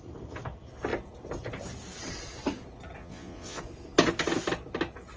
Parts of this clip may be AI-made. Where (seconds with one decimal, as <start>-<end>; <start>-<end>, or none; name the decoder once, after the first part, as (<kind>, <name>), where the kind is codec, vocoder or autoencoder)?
3.0-3.6 (vocoder, Vocos)